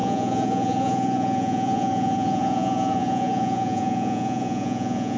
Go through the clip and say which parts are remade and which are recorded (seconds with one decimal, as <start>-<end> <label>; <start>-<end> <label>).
0.0-5.2 remade